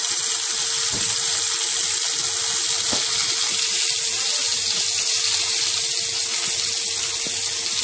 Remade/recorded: recorded